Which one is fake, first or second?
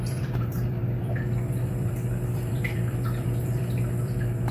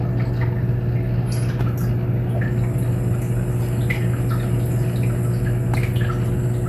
first